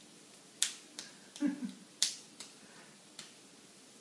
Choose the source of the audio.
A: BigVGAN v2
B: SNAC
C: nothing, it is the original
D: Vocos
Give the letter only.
C